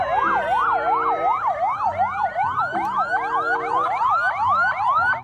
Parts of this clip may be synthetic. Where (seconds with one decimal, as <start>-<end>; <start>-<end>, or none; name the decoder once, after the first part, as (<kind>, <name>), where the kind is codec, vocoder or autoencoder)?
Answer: none